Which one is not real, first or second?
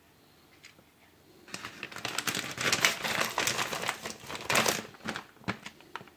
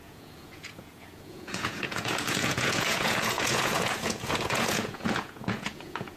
second